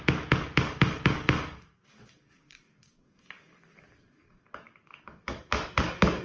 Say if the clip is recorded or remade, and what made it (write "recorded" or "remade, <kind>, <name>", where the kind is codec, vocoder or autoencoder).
remade, codec, DAC